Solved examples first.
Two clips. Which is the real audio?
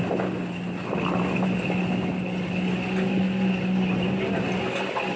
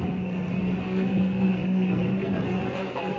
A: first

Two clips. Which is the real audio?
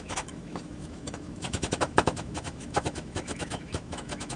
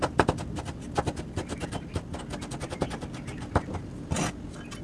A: second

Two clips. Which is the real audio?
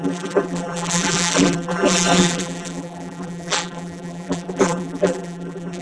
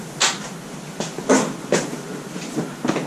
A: second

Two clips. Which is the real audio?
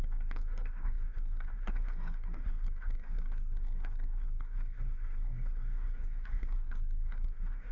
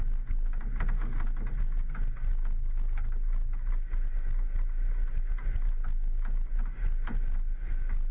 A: second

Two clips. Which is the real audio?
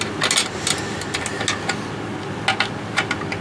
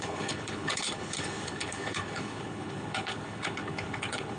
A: first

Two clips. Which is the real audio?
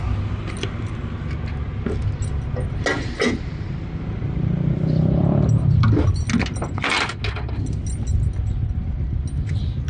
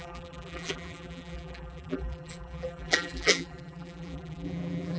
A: first